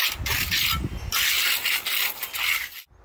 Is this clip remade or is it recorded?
recorded